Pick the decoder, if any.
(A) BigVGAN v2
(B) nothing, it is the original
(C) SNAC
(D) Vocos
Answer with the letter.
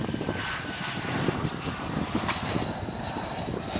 B